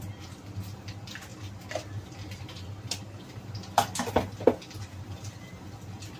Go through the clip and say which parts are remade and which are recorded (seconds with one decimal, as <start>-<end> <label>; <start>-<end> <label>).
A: 0.0-6.2 recorded